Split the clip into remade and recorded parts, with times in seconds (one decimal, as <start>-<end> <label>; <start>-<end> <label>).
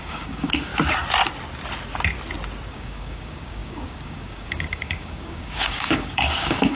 0.0-0.7 remade; 0.7-2.7 recorded; 2.7-6.8 remade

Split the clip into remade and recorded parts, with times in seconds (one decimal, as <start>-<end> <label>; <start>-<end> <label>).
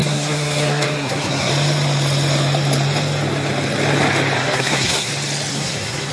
0.0-1.5 remade; 1.5-4.4 recorded; 4.4-5.1 remade; 5.1-5.5 recorded; 5.5-6.1 remade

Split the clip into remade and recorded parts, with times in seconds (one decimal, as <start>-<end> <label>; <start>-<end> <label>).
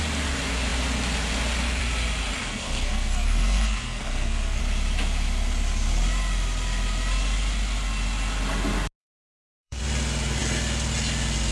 0.0-2.4 recorded; 2.4-4.6 remade; 4.6-9.0 recorded; 9.0-9.8 remade; 9.8-11.5 recorded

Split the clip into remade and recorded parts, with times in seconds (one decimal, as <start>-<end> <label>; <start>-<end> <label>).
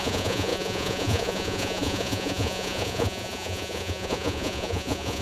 0.0-5.2 remade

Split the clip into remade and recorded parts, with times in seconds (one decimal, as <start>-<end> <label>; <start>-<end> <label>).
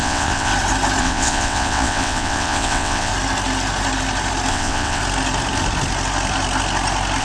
0.0-0.5 remade; 0.5-1.0 recorded; 1.0-3.1 remade; 3.1-4.5 recorded; 4.5-5.0 remade; 5.0-7.2 recorded